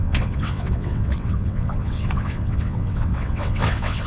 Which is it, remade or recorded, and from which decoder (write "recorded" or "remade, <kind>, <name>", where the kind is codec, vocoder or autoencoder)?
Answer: remade, vocoder, WaveNeXt